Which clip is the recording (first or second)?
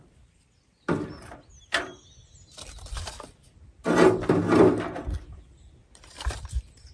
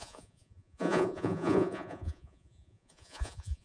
first